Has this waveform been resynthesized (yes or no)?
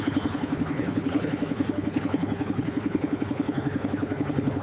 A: yes